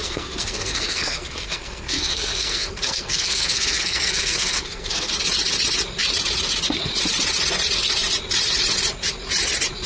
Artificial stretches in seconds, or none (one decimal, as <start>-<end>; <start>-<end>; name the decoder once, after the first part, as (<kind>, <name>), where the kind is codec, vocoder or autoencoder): 0.0-5.1 (codec, SNAC)